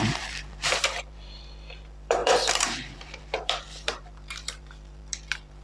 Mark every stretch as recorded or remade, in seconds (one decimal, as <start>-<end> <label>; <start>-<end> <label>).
0.0-5.6 remade